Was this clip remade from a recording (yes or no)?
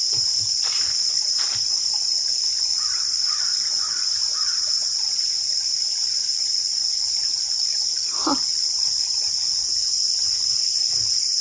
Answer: yes